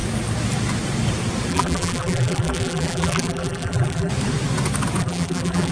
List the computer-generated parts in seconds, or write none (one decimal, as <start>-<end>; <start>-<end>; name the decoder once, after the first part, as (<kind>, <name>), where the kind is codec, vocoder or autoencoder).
1.5-4.1 (vocoder, BigVGAN v2); 5.0-5.7